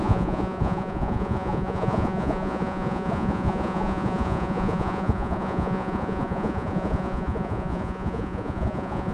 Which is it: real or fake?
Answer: fake